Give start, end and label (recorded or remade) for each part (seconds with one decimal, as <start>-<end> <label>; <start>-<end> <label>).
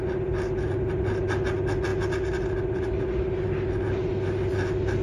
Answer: 0.0-5.0 recorded